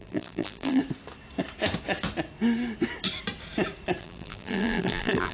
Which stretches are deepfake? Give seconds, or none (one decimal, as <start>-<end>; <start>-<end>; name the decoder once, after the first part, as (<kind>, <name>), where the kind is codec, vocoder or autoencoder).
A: 0.0-0.8 (vocoder, BigVGAN v2); 4.0-5.3